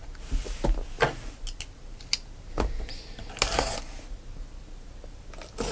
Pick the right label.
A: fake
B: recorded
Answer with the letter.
B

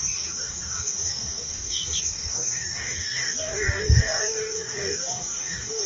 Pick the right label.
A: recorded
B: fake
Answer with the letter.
B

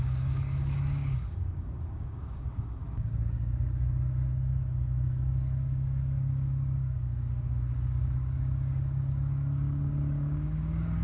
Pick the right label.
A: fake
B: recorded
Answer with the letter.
A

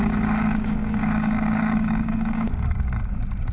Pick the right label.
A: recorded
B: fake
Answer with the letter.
B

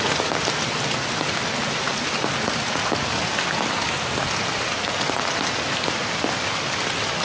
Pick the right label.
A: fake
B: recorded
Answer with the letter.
B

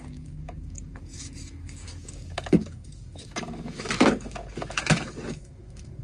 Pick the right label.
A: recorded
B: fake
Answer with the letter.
B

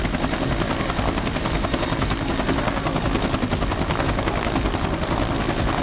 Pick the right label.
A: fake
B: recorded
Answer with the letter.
B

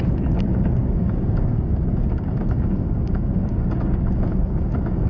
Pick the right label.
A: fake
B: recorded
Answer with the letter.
A